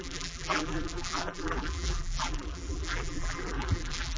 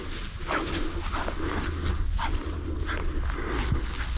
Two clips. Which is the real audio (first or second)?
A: second